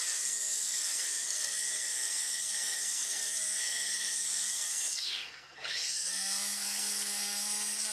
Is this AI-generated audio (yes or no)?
yes